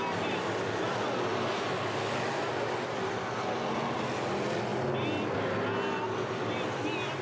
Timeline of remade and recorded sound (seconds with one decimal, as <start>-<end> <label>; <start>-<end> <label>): 0.0-7.2 recorded